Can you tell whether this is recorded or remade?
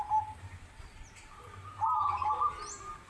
recorded